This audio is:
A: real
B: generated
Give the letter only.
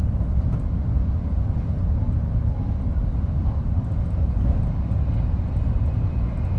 A